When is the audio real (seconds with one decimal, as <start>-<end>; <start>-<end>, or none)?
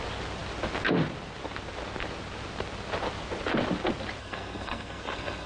0.0-4.2